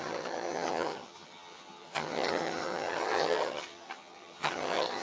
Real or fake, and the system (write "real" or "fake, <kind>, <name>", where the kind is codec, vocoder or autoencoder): fake, vocoder, HiFi-GAN